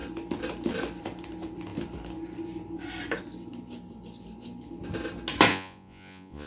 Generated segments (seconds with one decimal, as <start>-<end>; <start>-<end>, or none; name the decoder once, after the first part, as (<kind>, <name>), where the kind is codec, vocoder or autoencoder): 5.5-6.5 (vocoder, Vocos)